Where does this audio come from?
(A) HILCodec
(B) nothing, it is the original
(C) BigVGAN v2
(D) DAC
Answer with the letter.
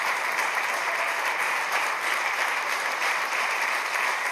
C